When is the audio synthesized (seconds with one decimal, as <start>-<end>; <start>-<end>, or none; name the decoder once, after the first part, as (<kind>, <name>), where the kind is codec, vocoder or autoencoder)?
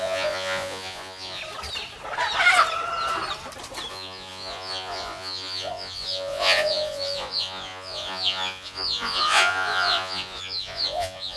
0.0-1.4 (vocoder, Vocos); 3.9-11.4